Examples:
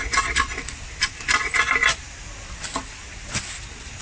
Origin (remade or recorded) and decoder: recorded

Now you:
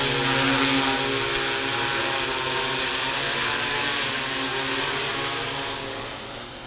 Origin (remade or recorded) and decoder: recorded